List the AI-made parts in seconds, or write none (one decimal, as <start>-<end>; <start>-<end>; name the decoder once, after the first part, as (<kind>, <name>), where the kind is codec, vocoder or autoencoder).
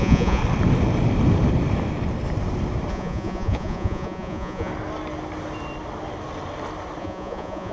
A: 0.0-0.4 (vocoder, Vocos); 2.9-4.7; 7.0-7.7